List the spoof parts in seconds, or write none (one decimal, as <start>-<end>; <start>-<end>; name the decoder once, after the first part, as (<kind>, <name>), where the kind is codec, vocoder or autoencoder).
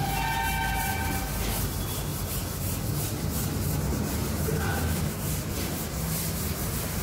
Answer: none